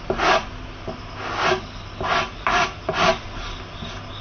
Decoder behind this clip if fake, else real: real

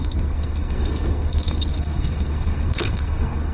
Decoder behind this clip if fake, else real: fake, codec, SNAC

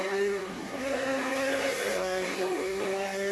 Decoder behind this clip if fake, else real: fake, codec, SNAC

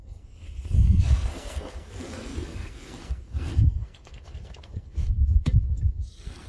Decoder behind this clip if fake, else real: fake, codec, SNAC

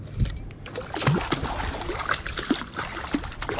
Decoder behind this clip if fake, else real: real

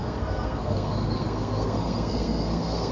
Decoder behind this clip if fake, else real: fake, codec, SNAC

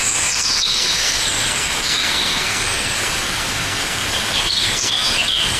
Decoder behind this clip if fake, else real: fake, codec, SNAC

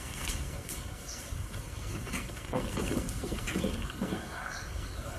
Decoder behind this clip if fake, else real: fake, codec, SNAC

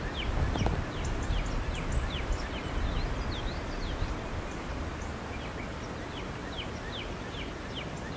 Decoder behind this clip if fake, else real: real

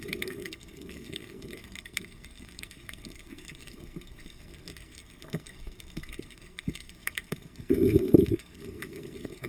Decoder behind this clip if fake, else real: fake, codec, SNAC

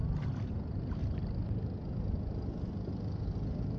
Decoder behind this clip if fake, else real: real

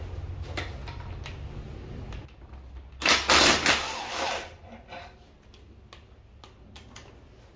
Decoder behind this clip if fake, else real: real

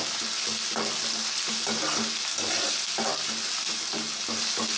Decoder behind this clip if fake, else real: real